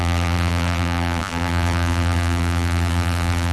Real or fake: fake